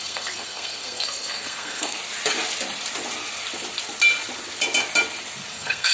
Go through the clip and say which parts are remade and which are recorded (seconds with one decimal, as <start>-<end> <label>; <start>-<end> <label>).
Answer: 0.0-2.0 remade; 2.0-5.5 recorded; 5.5-5.9 remade